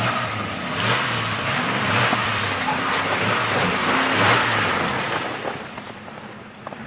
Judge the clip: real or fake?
fake